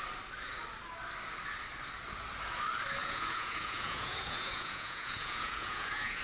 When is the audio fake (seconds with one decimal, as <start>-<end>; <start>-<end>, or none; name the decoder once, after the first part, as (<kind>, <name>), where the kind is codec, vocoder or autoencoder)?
3.0-6.2 (vocoder, Vocos)